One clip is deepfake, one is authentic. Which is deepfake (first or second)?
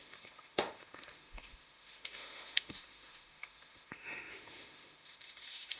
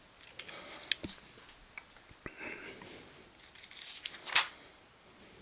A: first